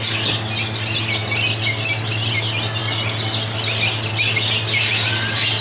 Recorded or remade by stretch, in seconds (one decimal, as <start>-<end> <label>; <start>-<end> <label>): 0.0-2.8 recorded; 2.8-4.1 remade; 4.1-5.6 recorded